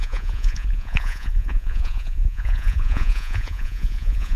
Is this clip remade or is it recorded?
remade